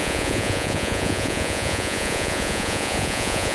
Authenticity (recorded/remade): remade